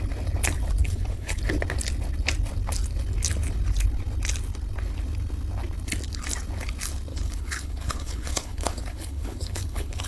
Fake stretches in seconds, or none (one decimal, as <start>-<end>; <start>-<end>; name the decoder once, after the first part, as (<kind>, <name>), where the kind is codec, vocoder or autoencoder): 0.8-1.4 (codec, HILCodec); 7.1-10.1